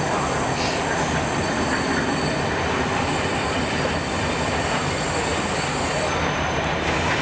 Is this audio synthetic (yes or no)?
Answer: no